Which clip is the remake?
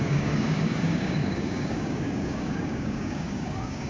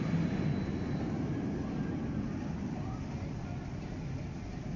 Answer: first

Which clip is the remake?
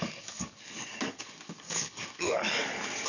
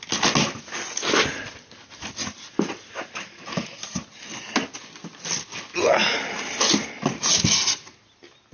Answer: first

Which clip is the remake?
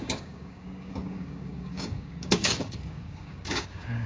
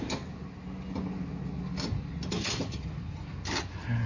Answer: first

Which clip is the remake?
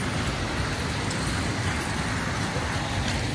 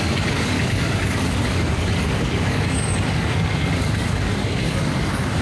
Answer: second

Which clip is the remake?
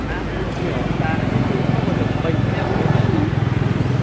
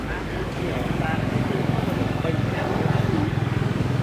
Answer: second